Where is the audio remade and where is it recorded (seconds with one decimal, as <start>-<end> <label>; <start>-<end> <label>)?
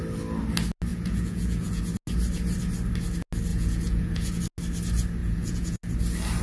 0.0-0.9 recorded; 0.9-1.8 remade; 1.8-3.5 recorded; 3.5-4.4 remade; 4.4-5.2 recorded; 5.2-5.8 remade; 5.8-6.4 recorded